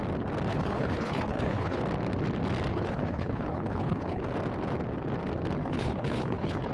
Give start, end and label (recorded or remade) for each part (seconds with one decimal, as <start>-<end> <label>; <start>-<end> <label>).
0.0-0.5 recorded; 0.5-1.8 remade; 1.8-2.7 recorded; 2.7-4.2 remade; 4.2-5.6 recorded; 5.6-6.7 remade